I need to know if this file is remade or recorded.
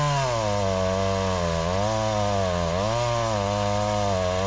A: recorded